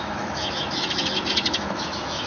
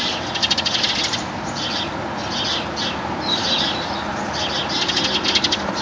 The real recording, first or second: second